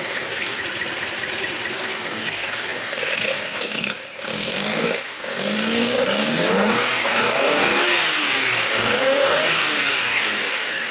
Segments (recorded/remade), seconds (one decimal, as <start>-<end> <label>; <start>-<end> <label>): 0.0-0.6 remade; 0.6-1.7 recorded; 1.7-10.9 remade